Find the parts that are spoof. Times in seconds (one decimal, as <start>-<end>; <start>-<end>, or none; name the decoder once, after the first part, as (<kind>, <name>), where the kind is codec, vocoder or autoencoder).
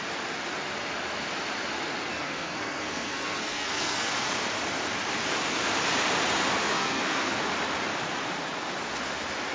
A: 2.1-4.1 (codec, SNAC); 6.6-7.4